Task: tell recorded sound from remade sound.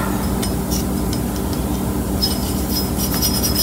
recorded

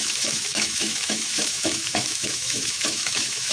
remade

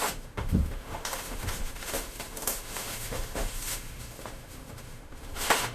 remade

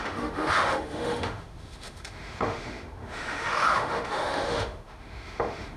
remade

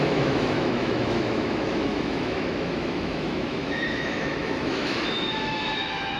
remade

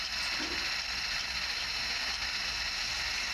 recorded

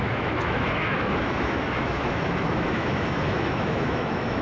remade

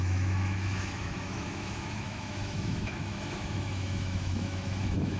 remade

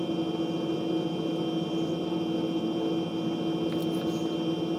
recorded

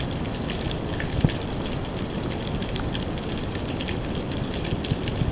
recorded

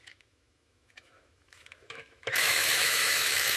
remade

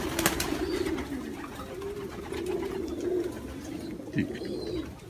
recorded